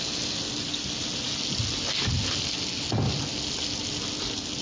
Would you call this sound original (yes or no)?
yes